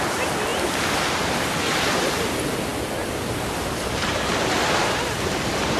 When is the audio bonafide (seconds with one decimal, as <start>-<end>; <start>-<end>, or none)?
0.0-5.8